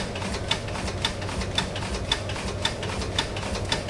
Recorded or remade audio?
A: recorded